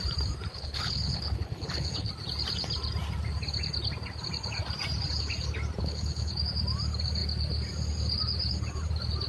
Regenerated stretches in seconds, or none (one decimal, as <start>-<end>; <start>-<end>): 0.5-2.1; 5.8-6.3